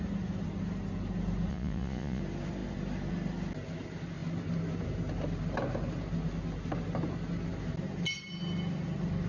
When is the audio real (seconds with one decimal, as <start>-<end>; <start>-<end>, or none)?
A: 0.0-1.5; 2.2-9.3